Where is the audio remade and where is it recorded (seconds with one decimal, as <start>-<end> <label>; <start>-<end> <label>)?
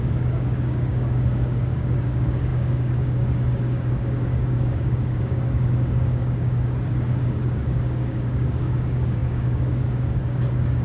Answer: 0.0-10.8 remade